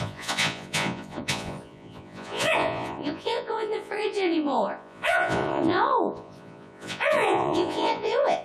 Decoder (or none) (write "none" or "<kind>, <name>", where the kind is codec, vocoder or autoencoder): vocoder, Vocos